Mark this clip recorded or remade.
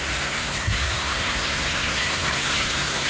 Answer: remade